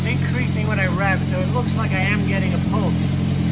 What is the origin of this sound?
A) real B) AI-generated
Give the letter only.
A